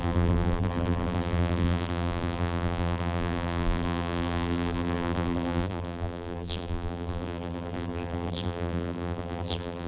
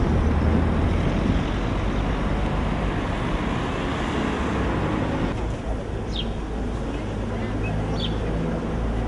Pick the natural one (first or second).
second